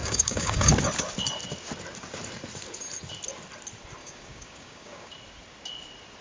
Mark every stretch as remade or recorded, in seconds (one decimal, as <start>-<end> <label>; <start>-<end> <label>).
0.0-0.7 remade; 0.7-4.0 recorded; 4.0-5.1 remade; 5.1-6.2 recorded